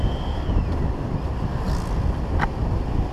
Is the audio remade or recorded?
recorded